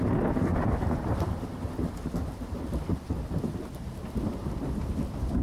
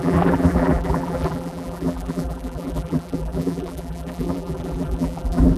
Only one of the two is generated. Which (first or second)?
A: second